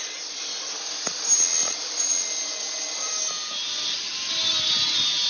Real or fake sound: real